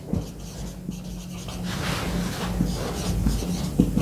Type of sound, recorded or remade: recorded